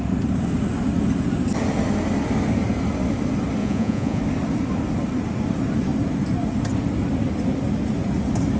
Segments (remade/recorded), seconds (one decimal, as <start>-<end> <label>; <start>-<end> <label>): 0.0-3.6 recorded; 3.6-4.2 remade; 4.2-8.6 recorded